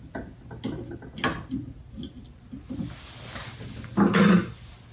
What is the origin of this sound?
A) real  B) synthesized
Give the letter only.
A